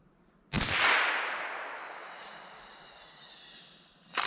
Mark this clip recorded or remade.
recorded